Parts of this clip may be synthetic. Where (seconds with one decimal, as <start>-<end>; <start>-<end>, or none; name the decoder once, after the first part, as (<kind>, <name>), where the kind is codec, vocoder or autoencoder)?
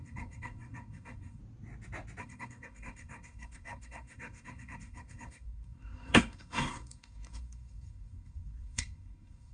0.0-1.4 (codec, SNAC); 2.2-9.5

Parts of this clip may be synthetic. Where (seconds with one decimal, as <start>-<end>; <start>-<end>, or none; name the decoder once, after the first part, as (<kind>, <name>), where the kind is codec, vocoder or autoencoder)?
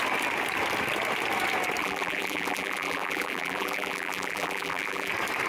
1.8-5.1 (vocoder, BigVGAN v2)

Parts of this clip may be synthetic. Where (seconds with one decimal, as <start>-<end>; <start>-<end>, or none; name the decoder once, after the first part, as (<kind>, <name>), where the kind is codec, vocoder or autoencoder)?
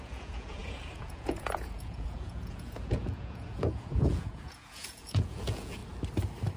0.0-5.8 (vocoder, Vocos)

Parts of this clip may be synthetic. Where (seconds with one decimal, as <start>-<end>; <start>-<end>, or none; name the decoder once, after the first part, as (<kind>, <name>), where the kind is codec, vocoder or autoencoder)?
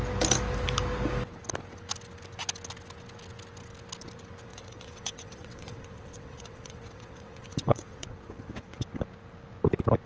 4.5-8.9 (vocoder, WaveNeXt)